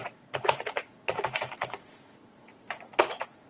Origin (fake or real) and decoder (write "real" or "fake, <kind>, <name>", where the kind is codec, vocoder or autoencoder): fake, vocoder, Vocos